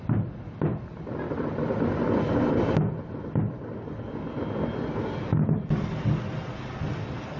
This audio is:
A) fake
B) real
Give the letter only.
B